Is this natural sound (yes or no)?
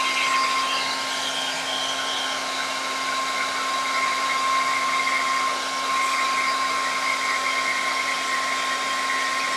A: yes